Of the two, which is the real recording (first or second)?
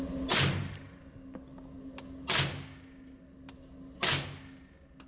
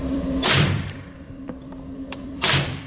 first